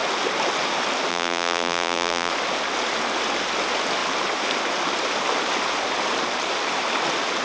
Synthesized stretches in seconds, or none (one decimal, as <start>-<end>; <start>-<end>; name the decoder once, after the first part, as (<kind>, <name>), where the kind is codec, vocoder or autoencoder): 1.1-2.3 (vocoder, BigVGAN v2)